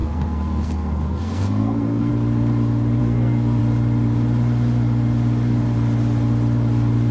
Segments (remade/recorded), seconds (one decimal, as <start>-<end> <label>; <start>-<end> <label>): 0.0-2.1 remade; 2.1-3.0 recorded; 3.0-3.6 remade; 3.6-7.1 recorded